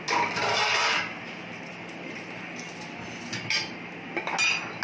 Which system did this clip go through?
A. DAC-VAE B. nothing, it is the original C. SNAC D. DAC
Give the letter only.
B